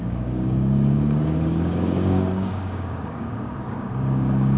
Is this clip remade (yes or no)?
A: yes